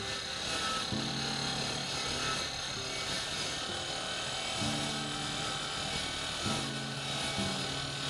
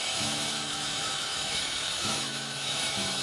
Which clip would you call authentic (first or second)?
first